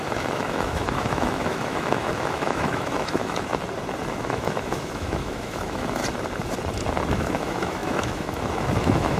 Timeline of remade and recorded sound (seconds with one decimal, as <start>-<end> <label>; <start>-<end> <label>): 0.0-3.5 remade; 3.5-4.1 recorded; 4.1-6.0 remade; 6.0-7.1 recorded; 7.1-9.2 remade